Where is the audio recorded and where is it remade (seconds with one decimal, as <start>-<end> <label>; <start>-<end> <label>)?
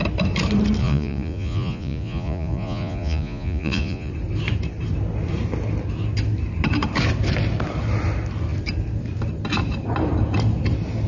0.0-0.8 recorded; 0.8-4.1 remade; 4.1-11.1 recorded